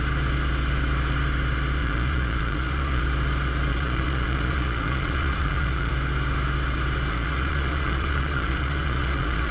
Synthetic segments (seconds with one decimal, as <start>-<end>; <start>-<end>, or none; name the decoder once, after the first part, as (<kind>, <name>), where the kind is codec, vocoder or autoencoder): 1.8-3.0 (vocoder, Vocos); 3.7-5.9; 7.1-9.5